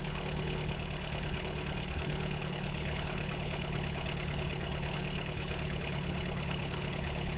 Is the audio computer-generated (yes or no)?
yes